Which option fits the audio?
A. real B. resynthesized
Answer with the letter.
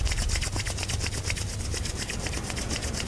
A